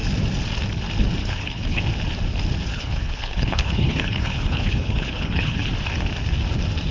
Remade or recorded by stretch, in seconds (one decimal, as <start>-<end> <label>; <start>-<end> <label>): 0.0-1.2 recorded; 1.2-1.8 remade; 1.8-2.7 recorded; 2.7-5.7 remade; 5.7-6.9 recorded

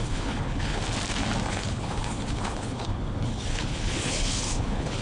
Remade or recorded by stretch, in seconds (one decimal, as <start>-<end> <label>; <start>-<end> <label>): 0.0-0.8 remade; 0.8-1.5 recorded; 1.5-5.0 remade

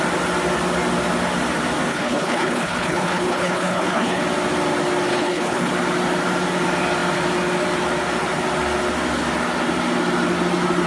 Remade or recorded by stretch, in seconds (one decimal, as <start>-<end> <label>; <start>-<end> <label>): 0.0-1.9 recorded; 1.9-4.2 remade; 4.2-5.1 recorded; 5.1-5.7 remade; 5.7-10.9 recorded

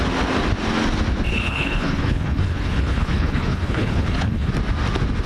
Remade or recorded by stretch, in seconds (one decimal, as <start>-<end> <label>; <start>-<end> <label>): 0.0-1.3 recorded; 1.3-4.5 remade; 4.5-5.3 recorded

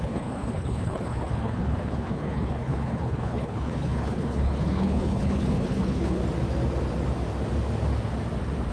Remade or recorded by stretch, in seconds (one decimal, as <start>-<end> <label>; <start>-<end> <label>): 0.0-6.2 remade; 6.2-8.7 recorded

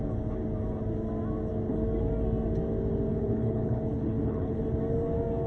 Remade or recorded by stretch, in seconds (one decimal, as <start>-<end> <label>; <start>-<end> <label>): 0.0-3.1 recorded; 3.1-4.6 remade; 4.6-5.5 recorded

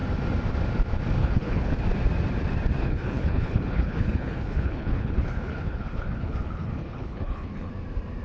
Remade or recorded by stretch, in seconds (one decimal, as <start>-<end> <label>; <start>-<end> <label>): 0.0-1.2 recorded; 1.2-1.8 remade; 1.8-2.8 recorded; 2.8-7.7 remade; 7.7-8.2 recorded

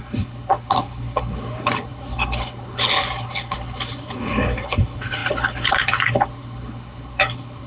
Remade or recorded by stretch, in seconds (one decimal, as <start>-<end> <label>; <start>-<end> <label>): 0.0-7.7 remade